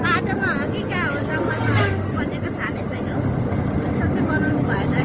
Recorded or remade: recorded